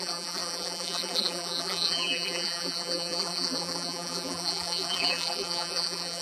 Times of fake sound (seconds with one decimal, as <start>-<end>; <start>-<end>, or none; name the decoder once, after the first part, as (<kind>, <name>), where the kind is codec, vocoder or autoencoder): 0.0-6.2 (vocoder, BigVGAN v2)